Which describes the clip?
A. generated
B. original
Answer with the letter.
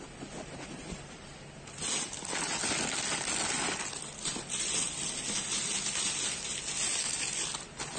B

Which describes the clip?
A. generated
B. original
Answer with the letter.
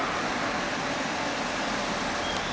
B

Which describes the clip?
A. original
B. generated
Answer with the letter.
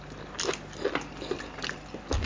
A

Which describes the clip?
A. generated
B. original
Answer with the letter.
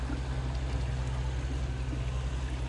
B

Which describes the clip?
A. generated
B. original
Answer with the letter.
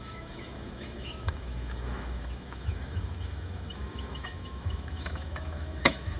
A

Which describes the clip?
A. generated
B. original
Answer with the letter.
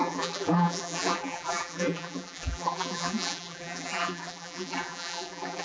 A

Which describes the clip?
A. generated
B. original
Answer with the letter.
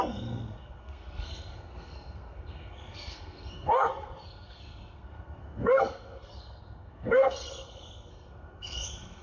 A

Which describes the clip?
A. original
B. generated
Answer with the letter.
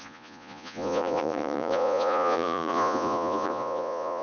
B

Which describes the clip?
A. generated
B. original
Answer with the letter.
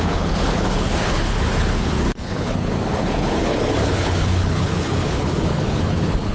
A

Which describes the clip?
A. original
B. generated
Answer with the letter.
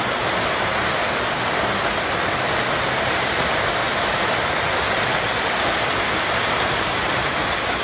A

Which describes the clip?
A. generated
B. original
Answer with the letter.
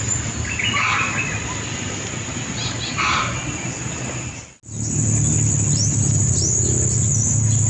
B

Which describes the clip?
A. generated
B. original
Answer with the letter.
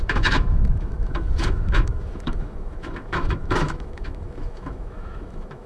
A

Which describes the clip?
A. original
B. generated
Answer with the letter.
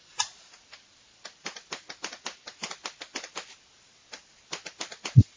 A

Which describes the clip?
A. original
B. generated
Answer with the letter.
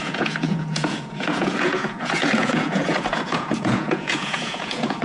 B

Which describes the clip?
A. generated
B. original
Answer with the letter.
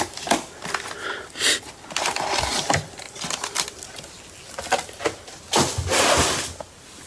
B